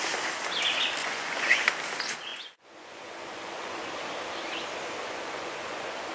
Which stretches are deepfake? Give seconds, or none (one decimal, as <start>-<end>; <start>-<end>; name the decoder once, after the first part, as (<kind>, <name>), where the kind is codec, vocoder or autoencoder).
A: 1.0-1.7 (vocoder, Vocos); 2.3-3.9; 5.0-6.1